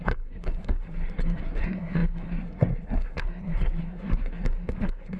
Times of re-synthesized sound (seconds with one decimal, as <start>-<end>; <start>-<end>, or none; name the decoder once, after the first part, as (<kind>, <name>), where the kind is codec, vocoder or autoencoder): 0.0-5.2 (codec, SNAC)

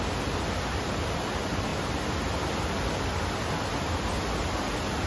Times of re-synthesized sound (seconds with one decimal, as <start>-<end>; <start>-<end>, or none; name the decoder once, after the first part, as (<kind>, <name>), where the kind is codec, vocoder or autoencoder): none

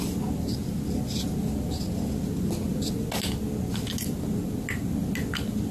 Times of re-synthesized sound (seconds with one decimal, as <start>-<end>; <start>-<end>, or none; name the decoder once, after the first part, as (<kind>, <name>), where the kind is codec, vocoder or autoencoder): none

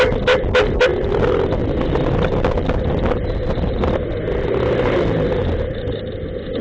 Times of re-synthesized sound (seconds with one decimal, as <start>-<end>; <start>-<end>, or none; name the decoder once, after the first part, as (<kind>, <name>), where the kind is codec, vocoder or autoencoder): none